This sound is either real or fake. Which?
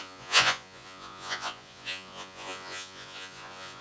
fake